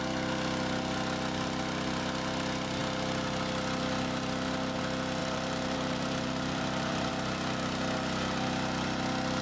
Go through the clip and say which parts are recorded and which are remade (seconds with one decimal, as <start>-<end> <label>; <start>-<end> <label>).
0.0-5.2 recorded; 5.2-7.1 remade; 7.1-9.4 recorded